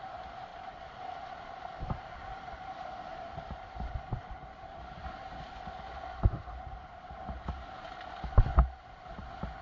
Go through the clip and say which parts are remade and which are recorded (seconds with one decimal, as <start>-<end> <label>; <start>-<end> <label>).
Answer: 0.0-0.5 remade; 0.5-1.2 recorded; 1.2-5.0 remade; 5.0-8.9 recorded; 8.9-9.6 remade